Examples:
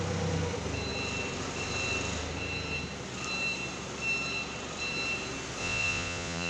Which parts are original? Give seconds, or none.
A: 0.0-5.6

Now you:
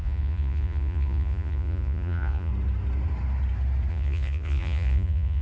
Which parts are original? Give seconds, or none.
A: 2.5-3.9

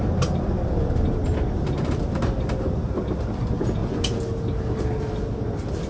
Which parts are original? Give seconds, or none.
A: 0.0-5.9

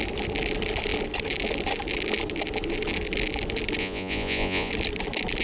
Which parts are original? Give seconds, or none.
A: 0.0-3.8; 4.7-5.4

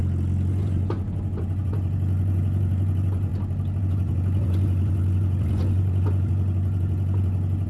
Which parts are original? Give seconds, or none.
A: 0.0-0.5; 3.3-3.8

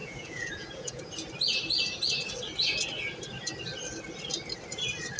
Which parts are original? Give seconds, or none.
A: 1.1-5.2

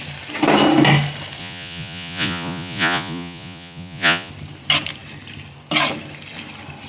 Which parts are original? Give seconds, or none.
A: 0.0-1.4; 4.3-6.9

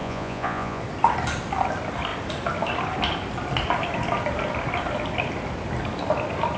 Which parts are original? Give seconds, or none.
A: 0.8-6.6